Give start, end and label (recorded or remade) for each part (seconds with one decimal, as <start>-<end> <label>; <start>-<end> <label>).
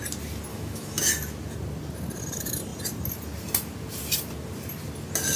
0.0-0.5 recorded; 0.5-1.1 remade; 1.1-5.4 recorded